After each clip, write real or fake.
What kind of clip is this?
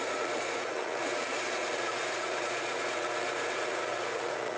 fake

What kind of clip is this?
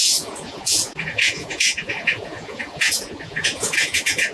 fake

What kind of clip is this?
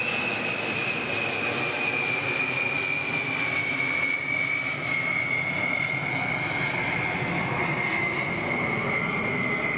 real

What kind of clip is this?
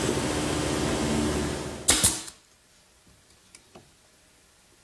real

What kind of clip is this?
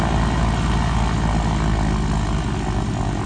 real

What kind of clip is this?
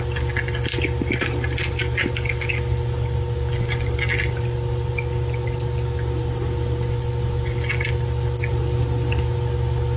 real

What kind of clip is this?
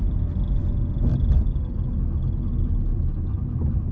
real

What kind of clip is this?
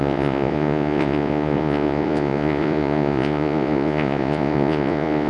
fake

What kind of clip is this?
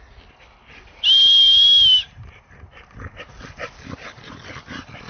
real